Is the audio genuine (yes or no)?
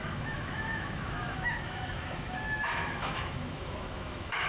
no